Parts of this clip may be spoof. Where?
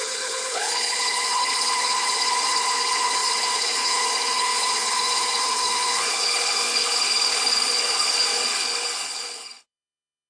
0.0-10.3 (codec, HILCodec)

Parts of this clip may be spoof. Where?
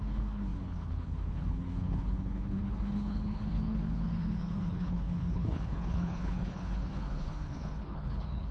0.0-8.5 (codec, HILCodec)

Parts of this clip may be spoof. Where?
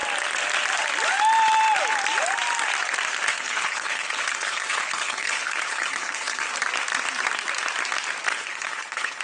3.3-6.5 (codec, HILCodec); 8.3-9.2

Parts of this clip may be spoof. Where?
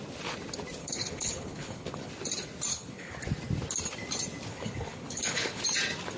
0.8-2.1 (codec, HILCodec); 2.7-3.2; 4.5-5.6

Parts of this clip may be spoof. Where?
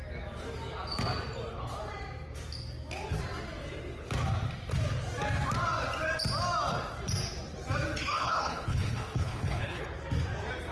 8.1-9.8 (codec, HILCodec)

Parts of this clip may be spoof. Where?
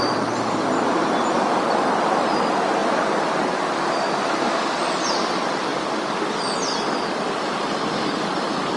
none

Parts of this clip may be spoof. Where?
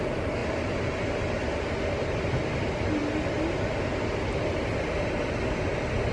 none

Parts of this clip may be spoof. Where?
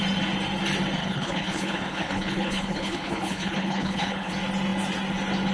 1.0-4.3 (codec, HILCodec)